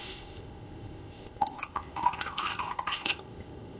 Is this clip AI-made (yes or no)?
yes